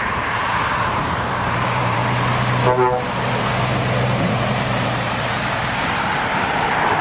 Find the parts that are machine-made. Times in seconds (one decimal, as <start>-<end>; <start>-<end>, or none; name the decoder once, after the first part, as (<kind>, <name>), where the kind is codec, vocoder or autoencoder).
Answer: 0.0-2.0 (vocoder, BigVGAN v2); 4.3-7.0